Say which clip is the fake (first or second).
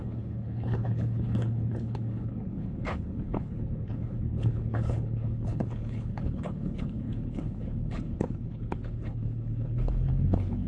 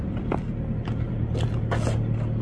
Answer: first